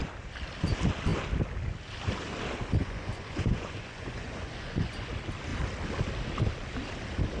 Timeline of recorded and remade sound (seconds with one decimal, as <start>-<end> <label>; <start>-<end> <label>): 0.0-2.8 recorded; 2.8-5.1 remade; 5.1-7.4 recorded